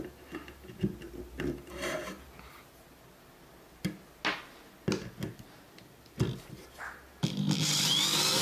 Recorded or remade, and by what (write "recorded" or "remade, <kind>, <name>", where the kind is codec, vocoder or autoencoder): recorded